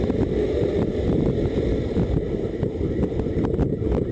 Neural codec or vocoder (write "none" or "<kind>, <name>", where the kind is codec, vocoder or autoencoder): none